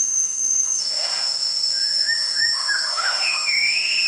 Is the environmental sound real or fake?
fake